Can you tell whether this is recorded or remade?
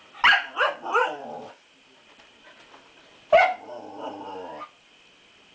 recorded